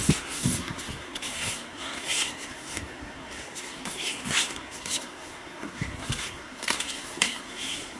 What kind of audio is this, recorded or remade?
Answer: remade